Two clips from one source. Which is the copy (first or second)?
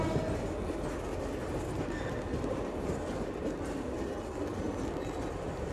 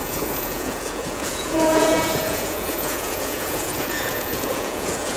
second